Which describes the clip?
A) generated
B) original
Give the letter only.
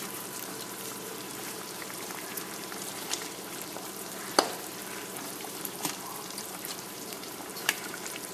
A